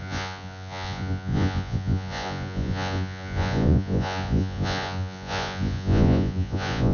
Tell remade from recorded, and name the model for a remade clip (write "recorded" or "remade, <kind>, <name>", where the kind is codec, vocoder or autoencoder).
remade, vocoder, Vocos